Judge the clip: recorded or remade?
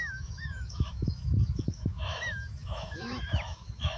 remade